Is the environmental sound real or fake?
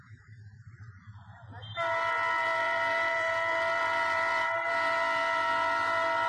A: fake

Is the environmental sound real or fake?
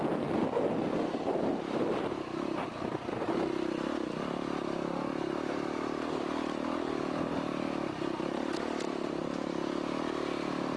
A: real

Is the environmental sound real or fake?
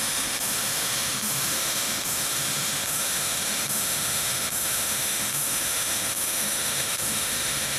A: fake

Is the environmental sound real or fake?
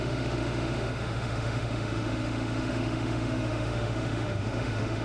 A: fake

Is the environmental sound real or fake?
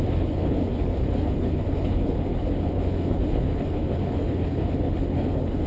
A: fake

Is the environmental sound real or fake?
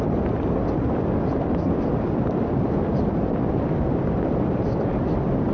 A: real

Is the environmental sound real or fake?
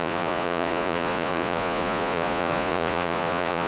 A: fake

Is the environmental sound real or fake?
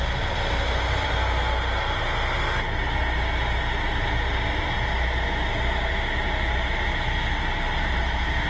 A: real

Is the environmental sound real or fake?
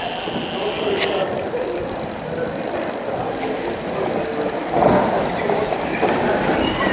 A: real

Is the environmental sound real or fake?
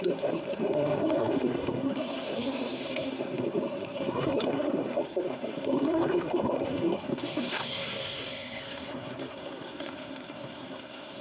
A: fake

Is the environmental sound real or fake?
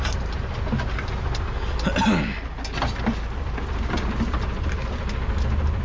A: real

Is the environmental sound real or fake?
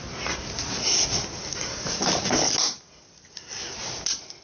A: real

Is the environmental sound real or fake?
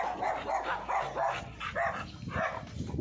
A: real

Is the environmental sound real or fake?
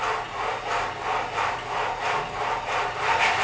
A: real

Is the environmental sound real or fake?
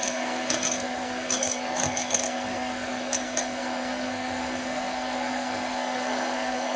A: fake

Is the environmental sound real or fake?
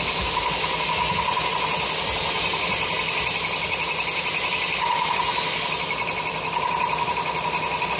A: real